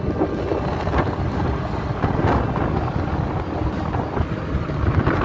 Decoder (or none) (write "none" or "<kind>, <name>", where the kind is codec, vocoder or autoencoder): none